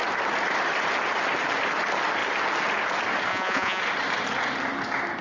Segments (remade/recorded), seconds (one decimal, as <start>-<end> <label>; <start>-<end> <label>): 0.0-3.3 recorded; 3.3-3.8 remade; 3.8-5.2 recorded